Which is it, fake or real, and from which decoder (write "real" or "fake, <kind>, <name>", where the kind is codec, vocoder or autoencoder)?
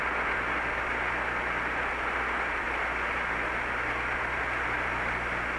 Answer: real